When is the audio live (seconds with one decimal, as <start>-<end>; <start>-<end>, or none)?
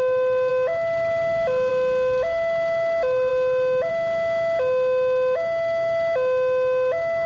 0.0-7.3